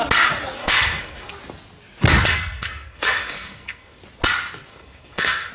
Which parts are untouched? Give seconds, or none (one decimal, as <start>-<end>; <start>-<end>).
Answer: 0.0-0.6; 1.3-2.3; 4.0-4.7